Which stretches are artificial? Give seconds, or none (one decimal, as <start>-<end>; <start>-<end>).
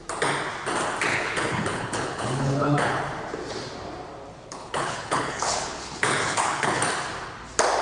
1.1-3.0; 4.3-6.8